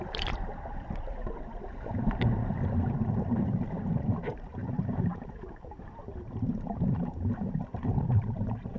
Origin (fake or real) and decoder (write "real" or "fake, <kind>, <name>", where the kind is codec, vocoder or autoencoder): fake, vocoder, BigVGAN v2